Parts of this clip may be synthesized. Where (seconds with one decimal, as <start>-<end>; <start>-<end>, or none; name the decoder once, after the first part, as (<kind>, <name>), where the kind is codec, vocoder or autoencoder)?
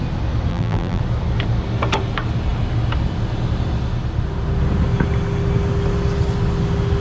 0.5-1.0 (vocoder, BigVGAN v2)